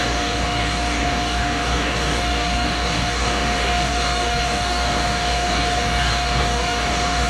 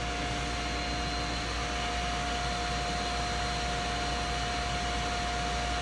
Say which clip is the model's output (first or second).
first